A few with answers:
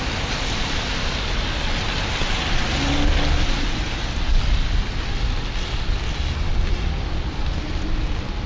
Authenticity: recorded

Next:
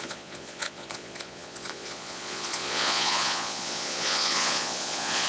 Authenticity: remade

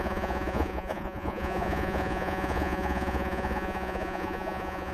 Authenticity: remade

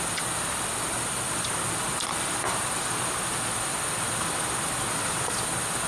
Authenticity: recorded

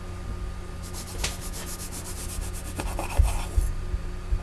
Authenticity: recorded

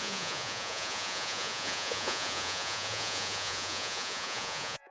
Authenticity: remade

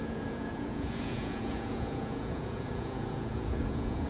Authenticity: remade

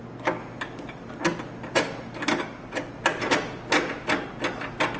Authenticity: recorded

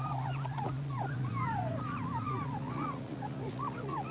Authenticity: remade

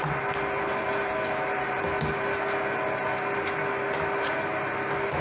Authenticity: recorded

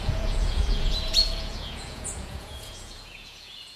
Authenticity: remade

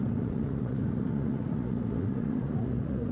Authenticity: remade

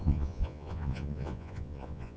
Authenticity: remade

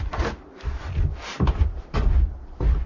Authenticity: recorded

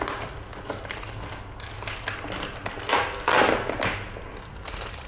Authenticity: recorded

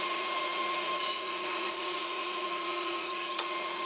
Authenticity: remade